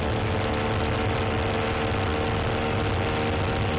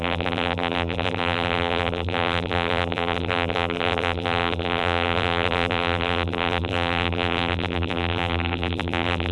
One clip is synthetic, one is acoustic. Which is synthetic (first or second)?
second